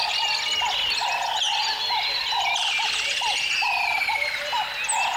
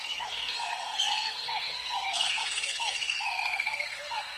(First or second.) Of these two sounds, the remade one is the second